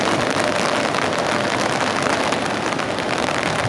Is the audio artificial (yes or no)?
no